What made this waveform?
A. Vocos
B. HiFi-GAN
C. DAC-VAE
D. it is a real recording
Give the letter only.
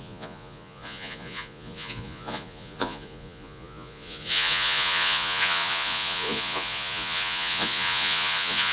A